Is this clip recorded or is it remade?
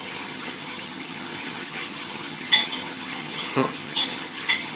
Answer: remade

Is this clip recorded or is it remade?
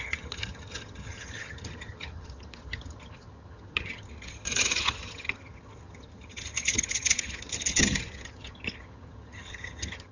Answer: remade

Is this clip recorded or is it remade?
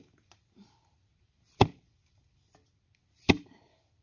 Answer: recorded